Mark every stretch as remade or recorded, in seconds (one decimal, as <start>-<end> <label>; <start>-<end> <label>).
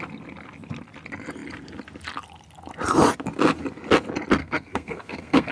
0.0-4.4 recorded; 4.4-5.5 remade